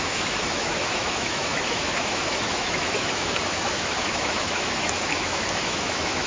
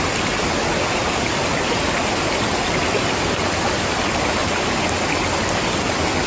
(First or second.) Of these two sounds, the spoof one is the first